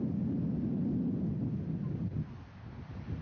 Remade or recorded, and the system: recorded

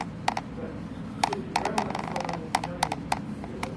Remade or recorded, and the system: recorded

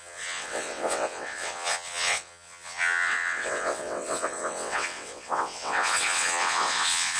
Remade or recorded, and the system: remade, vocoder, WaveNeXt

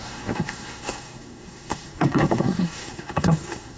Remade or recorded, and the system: remade, codec, SNAC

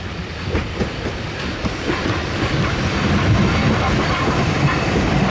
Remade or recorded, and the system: recorded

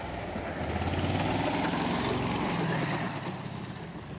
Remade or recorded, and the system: recorded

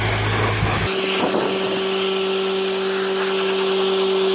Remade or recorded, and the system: recorded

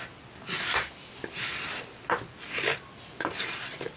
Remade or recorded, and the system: recorded